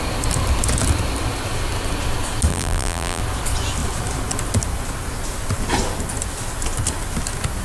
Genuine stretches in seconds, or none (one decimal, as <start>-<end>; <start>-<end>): 0.0-2.5; 3.2-7.6